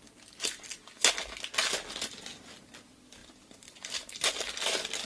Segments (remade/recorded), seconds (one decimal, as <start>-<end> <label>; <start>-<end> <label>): 0.0-3.2 recorded; 3.2-4.5 remade; 4.5-5.0 recorded